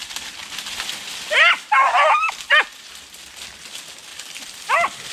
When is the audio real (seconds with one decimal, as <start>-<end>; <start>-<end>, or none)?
0.0-0.4; 1.1-1.8; 2.3-4.1